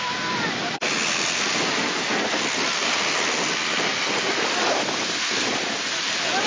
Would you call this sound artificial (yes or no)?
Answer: no